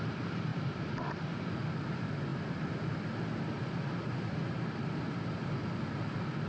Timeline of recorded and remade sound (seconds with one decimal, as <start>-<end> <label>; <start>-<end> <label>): 0.0-6.5 recorded